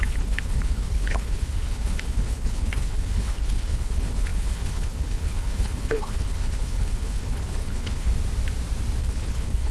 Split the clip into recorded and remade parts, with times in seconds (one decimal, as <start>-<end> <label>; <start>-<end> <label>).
0.0-8.1 remade; 8.1-9.0 recorded; 9.0-9.7 remade